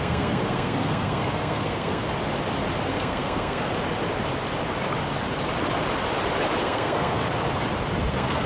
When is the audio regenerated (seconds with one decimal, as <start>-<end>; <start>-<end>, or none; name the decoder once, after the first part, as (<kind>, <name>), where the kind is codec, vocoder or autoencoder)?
0.0-2.0 (codec, SNAC); 2.9-3.7; 6.6-7.2; 8.1-8.5